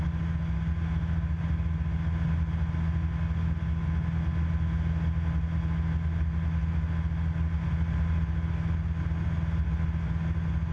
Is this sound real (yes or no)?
yes